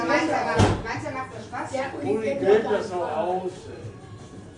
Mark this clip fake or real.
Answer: real